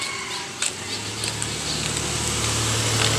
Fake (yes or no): no